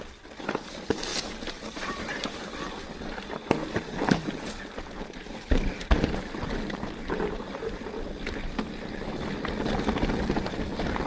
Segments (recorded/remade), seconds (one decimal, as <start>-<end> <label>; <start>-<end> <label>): 0.0-1.1 recorded; 1.1-2.7 remade; 2.7-3.6 recorded; 3.6-7.9 remade; 7.9-11.1 recorded